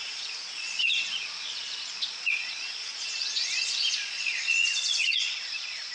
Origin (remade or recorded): remade